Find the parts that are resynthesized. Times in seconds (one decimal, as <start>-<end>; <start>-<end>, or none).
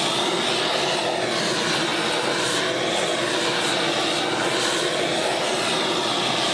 none